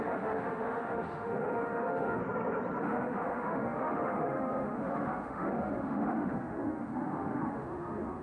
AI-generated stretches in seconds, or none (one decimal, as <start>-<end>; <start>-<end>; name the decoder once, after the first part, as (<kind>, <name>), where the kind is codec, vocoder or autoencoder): 0.0-2.2 (autoencoder, DAC-VAE); 2.8-8.2